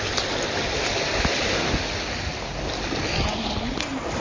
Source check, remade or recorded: recorded